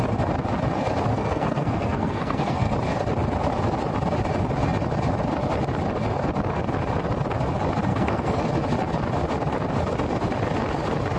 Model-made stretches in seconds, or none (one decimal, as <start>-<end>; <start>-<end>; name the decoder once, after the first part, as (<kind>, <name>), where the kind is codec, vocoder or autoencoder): 1.1-2.7 (codec, SNAC); 7.9-8.4